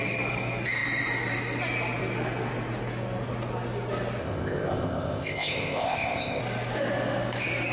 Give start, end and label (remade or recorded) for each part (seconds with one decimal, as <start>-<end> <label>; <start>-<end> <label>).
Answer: 0.0-4.2 recorded; 4.2-6.4 remade; 6.4-7.7 recorded